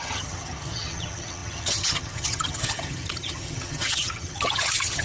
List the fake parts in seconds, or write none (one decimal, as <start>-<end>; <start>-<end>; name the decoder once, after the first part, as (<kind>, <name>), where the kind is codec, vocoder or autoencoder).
0.0-5.0 (vocoder, HiFi-GAN)

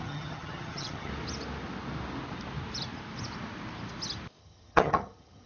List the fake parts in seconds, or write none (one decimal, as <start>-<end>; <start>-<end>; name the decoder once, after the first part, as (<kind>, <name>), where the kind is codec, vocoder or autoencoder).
0.0-1.1 (vocoder, HiFi-GAN); 4.4-5.5